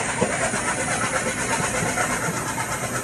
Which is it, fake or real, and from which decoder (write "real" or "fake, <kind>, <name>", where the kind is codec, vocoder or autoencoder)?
real